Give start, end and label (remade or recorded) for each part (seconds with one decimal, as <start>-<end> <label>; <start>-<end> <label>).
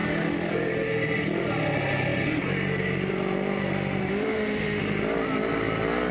0.0-0.5 remade; 0.5-4.0 recorded; 4.0-4.8 remade; 4.8-6.1 recorded